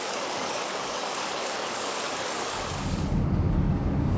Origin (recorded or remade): remade